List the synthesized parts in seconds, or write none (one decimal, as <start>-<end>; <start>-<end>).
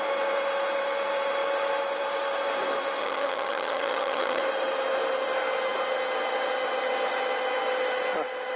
3.0-4.4